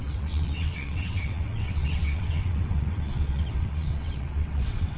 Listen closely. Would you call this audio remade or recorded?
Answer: remade